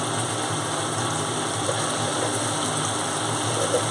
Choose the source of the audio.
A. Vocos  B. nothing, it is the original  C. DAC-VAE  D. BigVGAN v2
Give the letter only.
B